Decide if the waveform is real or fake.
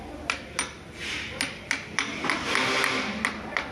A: real